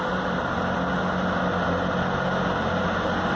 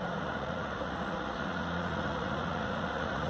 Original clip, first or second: first